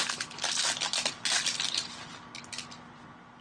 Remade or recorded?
recorded